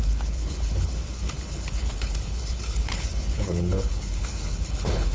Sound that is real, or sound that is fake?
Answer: fake